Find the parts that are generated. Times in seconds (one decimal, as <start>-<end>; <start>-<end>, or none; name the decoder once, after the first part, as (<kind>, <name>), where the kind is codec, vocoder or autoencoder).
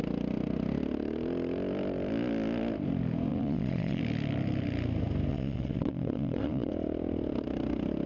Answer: 3.3-4.0 (vocoder, Vocos); 5.3-6.7